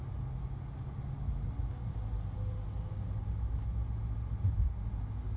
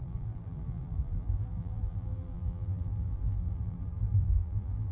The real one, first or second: first